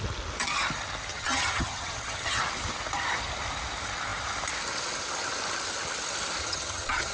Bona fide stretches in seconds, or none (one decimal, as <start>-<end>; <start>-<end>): 0.0-1.1; 2.4-6.4